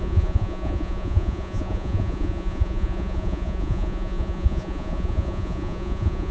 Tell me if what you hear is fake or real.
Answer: fake